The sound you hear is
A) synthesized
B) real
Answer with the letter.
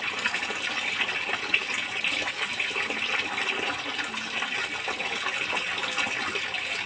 B